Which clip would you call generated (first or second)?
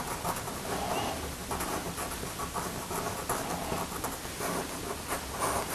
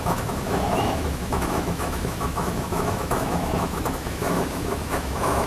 second